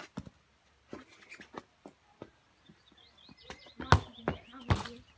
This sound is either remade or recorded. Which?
recorded